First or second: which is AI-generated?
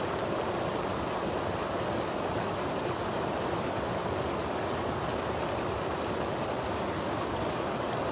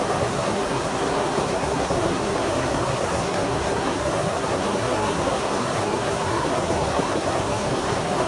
second